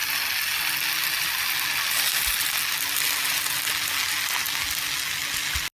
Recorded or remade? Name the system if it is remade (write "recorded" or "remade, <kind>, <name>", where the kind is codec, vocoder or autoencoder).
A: recorded